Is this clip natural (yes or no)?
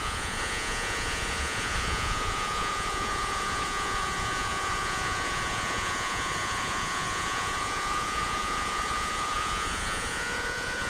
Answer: no